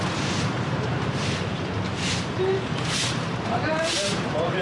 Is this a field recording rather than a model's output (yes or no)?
no